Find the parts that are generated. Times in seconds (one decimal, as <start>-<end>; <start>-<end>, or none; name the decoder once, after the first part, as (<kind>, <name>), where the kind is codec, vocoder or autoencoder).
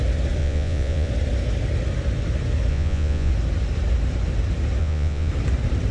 0.4-1.1 (vocoder, Vocos); 2.7-3.3; 4.8-5.3